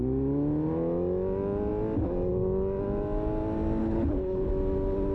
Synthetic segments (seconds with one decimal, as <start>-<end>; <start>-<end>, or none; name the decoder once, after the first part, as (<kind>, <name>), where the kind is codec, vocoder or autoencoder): 3.8-4.5 (codec, HILCodec)

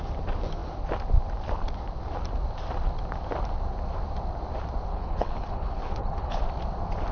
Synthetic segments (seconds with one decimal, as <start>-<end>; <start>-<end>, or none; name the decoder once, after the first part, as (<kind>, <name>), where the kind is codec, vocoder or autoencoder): 4.9-6.4 (codec, HILCodec)

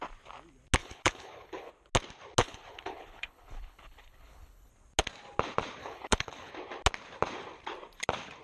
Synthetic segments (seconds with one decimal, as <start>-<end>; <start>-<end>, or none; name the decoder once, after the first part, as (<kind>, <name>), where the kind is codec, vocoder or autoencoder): 0.8-1.7 (codec, HILCodec); 2.4-4.7; 5.8-6.5

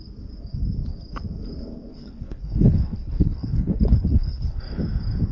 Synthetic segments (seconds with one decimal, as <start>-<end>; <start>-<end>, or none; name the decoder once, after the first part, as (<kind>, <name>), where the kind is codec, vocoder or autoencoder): 1.9-4.6 (codec, HILCodec)

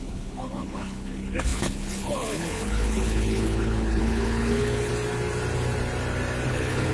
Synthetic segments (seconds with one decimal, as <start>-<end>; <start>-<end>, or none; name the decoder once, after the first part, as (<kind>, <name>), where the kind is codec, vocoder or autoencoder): 0.0-4.9 (codec, HILCodec); 6.5-6.9